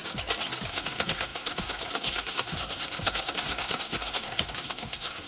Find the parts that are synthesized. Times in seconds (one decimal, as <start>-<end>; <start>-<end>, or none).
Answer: 0.7-5.3